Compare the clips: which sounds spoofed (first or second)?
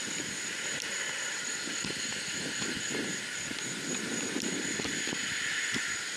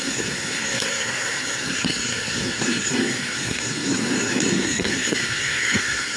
second